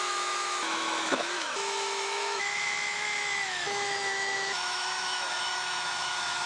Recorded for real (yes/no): no